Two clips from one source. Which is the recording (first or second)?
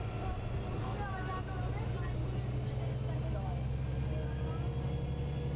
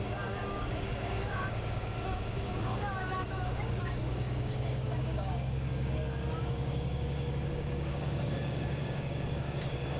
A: first